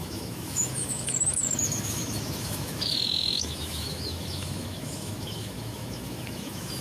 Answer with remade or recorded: remade